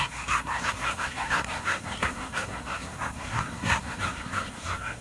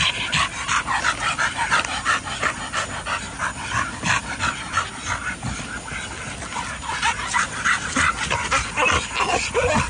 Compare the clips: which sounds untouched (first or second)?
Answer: second